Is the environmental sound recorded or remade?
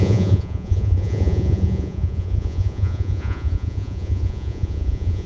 remade